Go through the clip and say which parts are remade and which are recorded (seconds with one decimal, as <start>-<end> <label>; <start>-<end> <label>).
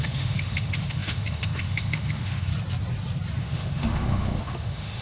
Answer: 0.0-2.5 remade; 2.5-3.4 recorded; 3.4-5.0 remade